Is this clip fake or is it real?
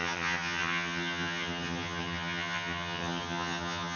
fake